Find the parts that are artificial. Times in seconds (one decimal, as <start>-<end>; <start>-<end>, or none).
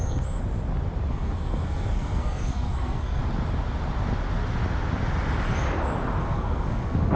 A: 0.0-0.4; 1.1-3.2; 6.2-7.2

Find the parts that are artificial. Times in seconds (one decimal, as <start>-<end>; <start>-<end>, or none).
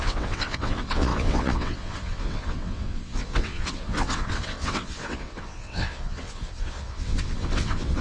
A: 0.0-8.0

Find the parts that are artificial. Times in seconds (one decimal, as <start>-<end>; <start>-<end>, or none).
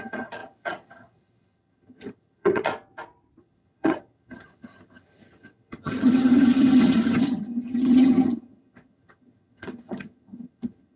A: 0.0-2.7; 3.4-11.0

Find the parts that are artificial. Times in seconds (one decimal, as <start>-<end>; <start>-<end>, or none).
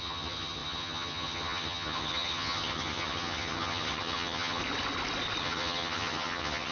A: 0.0-4.6; 5.4-6.7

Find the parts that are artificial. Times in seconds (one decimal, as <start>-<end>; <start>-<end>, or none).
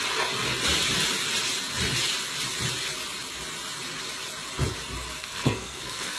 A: 5.2-6.2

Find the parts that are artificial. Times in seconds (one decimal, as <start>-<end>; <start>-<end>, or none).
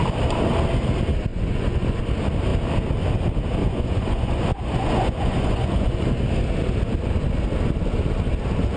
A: 1.3-2.0; 3.6-6.1